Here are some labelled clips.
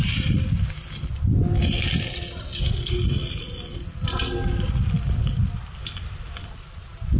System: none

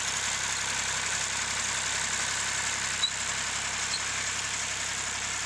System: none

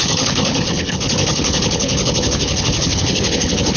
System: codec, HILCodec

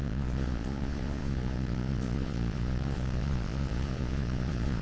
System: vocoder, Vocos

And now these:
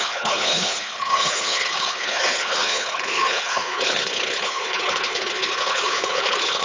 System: codec, HILCodec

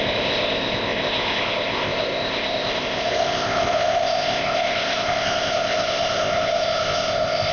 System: codec, ZipCodec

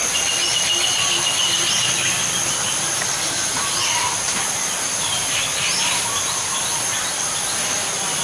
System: none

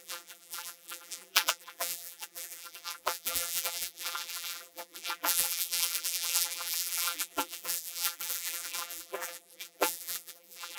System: vocoder, BigVGAN v2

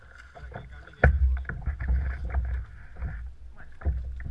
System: none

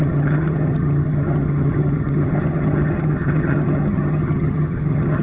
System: vocoder, HiFi-GAN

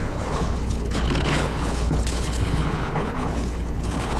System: codec, HILCodec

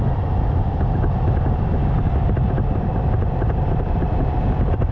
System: none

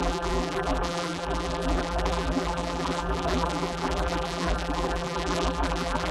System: vocoder, BigVGAN v2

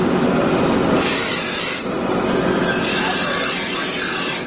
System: none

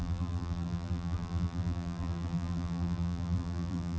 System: vocoder, BigVGAN v2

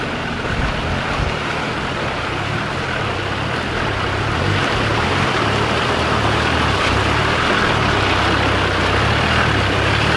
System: none